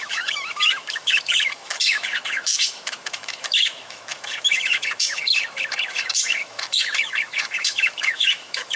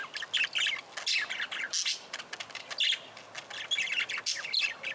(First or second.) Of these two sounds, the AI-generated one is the first